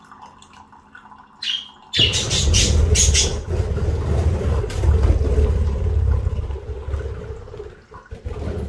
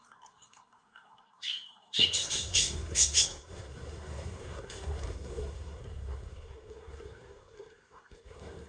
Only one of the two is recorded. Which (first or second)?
first